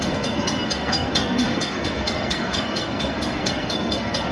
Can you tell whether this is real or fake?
fake